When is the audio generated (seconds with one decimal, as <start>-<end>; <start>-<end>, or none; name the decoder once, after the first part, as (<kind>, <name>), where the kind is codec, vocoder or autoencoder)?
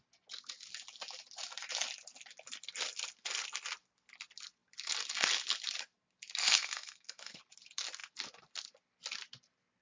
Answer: 6.4-7.4 (codec, SNAC)